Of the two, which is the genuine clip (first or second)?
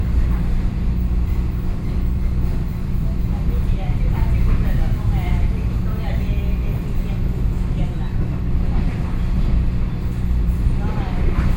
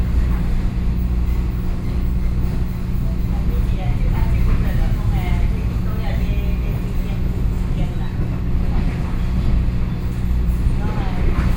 second